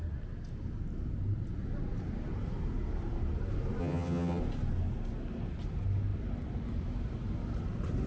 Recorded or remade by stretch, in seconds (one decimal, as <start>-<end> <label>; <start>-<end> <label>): 0.0-3.8 recorded; 3.8-4.4 remade; 4.4-8.1 recorded